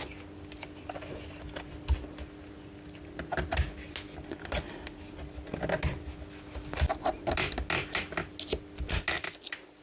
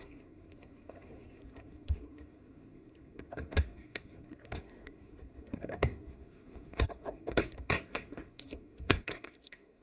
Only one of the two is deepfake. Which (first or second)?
second